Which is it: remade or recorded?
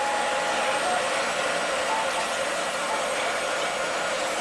recorded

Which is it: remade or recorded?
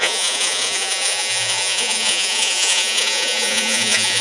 remade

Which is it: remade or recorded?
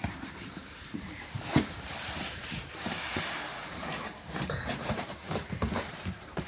remade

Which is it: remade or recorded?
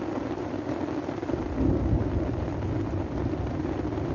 recorded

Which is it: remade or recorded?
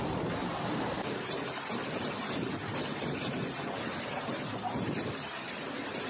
remade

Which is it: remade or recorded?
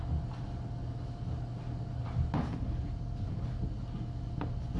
recorded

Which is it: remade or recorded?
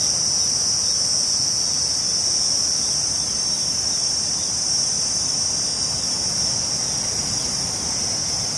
recorded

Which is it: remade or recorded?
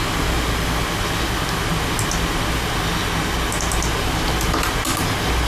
recorded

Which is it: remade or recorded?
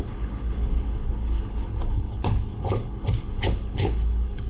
remade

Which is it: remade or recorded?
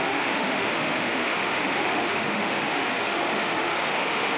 remade